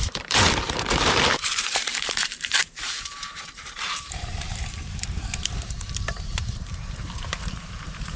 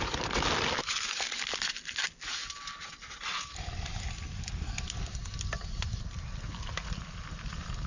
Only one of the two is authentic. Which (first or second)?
second